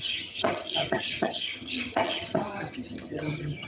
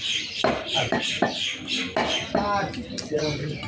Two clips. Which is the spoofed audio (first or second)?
first